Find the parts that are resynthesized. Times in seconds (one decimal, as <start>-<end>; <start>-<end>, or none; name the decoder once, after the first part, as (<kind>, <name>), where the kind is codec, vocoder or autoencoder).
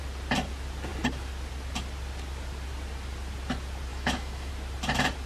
3.9-4.5 (autoencoder, DAC-VAE)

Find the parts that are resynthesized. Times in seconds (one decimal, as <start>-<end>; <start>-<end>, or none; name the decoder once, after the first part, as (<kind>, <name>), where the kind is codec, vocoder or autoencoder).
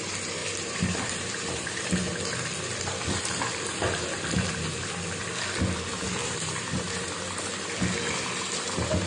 0.4-1.8 (vocoder, BigVGAN v2); 6.2-7.1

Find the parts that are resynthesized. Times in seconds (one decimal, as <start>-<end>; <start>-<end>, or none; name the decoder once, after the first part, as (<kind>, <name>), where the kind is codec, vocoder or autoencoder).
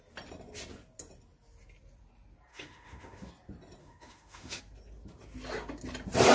2.5-3.3 (autoencoder, DAC-VAE); 3.8-4.6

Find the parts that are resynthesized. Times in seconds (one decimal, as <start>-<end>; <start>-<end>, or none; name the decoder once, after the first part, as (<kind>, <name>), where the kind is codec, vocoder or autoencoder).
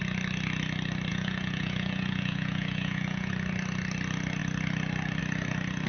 1.1-3.3 (vocoder, Vocos)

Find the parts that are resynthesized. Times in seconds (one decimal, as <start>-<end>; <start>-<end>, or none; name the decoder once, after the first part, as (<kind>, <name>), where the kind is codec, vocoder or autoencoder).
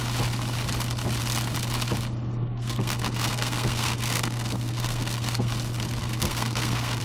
2.3-5.5 (codec, SNAC); 6.0-7.0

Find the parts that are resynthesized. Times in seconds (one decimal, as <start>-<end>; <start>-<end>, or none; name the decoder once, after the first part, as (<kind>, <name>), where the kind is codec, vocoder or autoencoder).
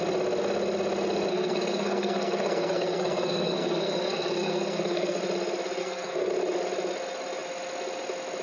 1.3-5.2 (codec, SNAC); 5.8-6.3